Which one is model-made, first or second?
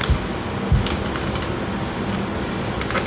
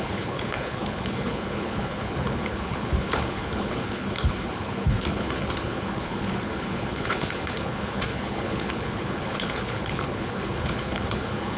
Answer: second